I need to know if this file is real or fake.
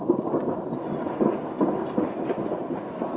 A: real